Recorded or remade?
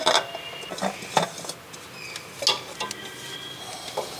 recorded